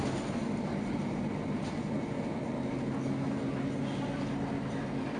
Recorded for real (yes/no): yes